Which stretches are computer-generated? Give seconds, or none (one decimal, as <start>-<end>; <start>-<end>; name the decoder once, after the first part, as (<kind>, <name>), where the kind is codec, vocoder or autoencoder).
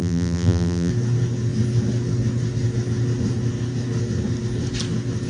0.0-0.9 (vocoder, BigVGAN v2)